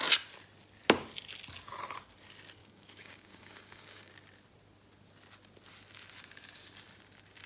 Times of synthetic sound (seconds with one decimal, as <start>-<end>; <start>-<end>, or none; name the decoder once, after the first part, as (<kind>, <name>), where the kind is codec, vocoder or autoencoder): 2.6-4.1 (codec, DAC)